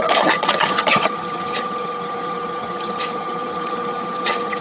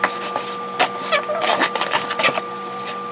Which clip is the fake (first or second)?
first